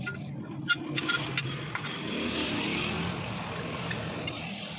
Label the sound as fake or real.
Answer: real